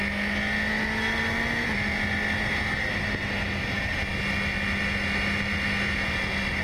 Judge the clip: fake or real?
real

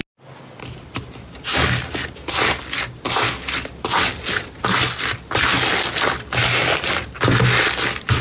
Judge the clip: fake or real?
real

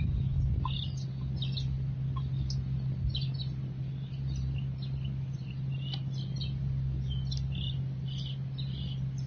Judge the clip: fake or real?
real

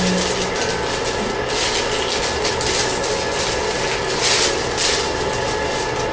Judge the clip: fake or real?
real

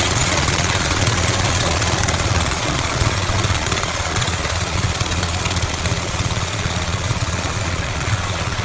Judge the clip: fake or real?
fake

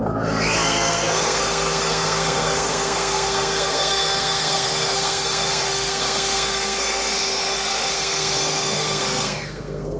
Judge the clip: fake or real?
fake